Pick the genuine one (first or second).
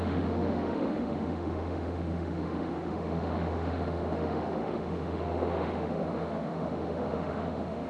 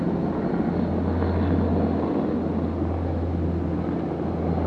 second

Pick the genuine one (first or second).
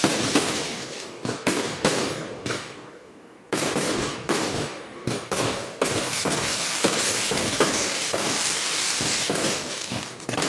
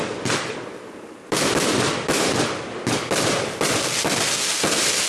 second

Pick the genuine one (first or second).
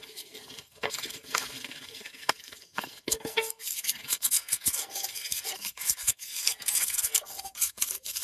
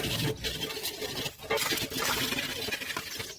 second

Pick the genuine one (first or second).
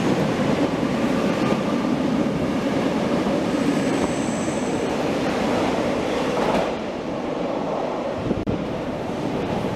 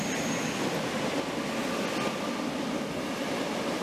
second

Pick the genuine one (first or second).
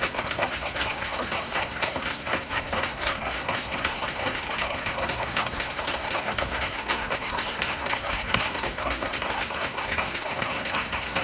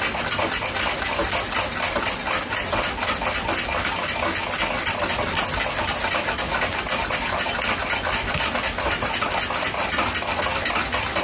second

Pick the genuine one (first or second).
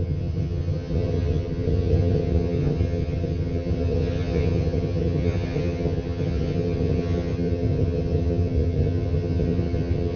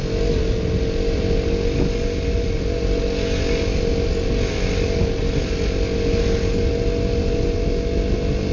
second